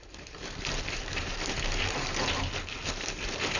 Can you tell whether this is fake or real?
fake